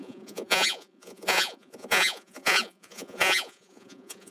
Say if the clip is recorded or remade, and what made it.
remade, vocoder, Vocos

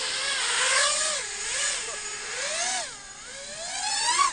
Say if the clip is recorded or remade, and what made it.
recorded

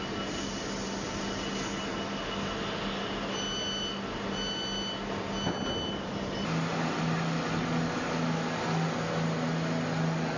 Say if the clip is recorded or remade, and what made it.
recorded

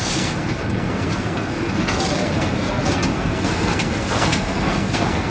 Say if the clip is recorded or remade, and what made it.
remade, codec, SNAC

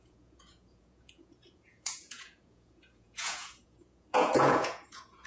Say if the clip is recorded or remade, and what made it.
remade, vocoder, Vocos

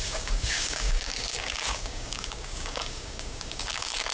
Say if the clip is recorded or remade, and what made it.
remade, codec, DAC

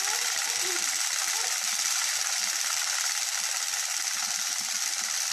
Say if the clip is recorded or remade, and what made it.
remade, vocoder, BigVGAN v2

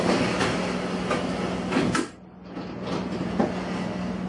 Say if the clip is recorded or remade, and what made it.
recorded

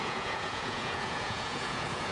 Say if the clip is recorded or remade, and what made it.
remade, vocoder, Vocos